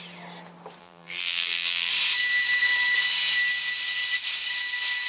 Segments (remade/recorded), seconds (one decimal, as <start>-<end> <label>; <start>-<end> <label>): 0.0-0.8 recorded; 0.8-1.9 remade; 1.9-5.1 recorded